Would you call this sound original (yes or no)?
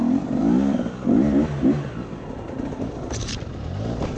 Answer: yes